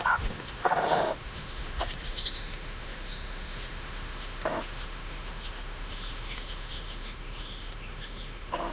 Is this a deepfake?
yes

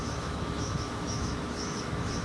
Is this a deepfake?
yes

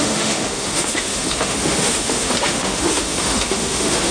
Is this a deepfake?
yes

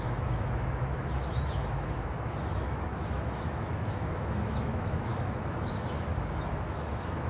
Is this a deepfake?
yes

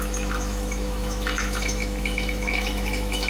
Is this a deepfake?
yes